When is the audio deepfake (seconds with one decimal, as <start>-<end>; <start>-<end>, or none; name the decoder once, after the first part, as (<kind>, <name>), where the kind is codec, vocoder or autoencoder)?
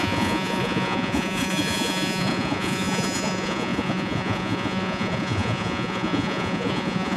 0.0-7.2 (vocoder, Vocos)